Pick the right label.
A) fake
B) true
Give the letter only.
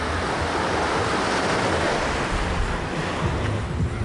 B